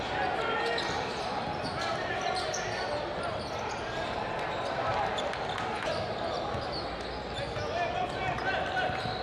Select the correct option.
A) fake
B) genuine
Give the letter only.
B